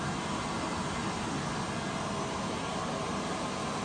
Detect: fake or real real